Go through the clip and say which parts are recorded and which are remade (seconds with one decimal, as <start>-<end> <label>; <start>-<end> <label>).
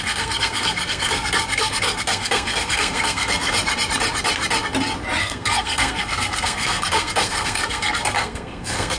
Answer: 0.0-3.5 remade; 3.5-5.2 recorded; 5.2-9.0 remade